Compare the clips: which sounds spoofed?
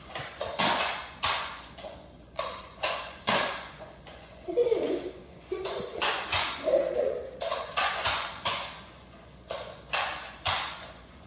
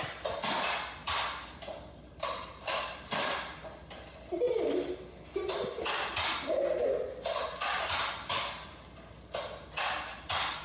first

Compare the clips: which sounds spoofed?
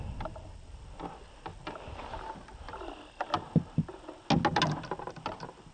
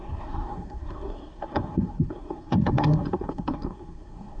second